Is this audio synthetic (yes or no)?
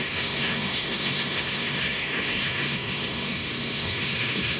yes